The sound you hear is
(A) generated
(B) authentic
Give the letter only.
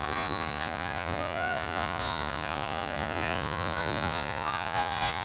A